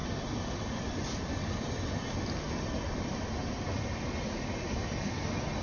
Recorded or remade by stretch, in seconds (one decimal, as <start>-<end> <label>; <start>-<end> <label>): 0.0-5.6 recorded